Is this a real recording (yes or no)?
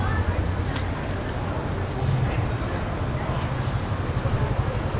yes